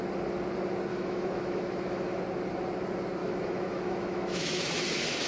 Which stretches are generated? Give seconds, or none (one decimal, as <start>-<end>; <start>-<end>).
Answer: 0.9-2.2; 3.2-4.8